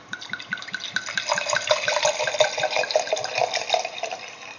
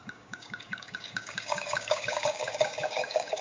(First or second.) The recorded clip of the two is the first